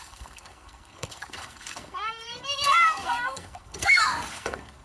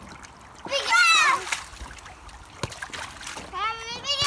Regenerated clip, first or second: first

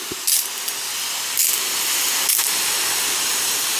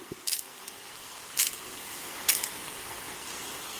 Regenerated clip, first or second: second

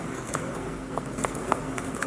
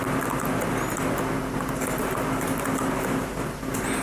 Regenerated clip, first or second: first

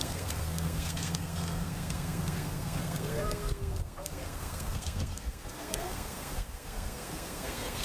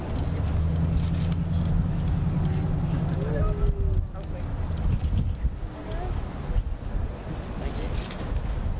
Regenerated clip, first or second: first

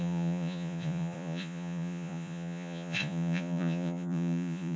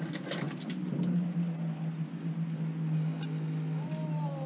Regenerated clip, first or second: first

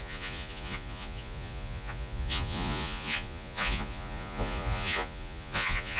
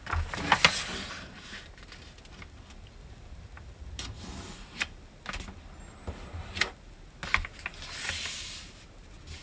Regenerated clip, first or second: first